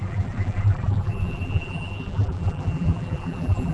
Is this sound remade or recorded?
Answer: remade